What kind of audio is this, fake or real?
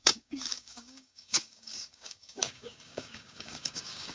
fake